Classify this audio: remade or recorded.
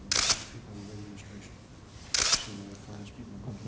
recorded